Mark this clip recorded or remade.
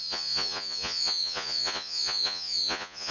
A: remade